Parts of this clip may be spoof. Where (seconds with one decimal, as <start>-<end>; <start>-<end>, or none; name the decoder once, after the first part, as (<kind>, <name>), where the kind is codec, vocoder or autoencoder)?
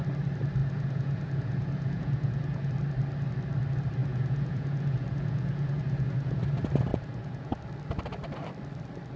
0.6-2.7 (vocoder, Vocos); 4.0-6.4; 6.9-7.6